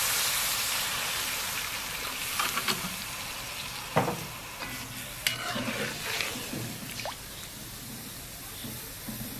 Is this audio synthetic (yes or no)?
no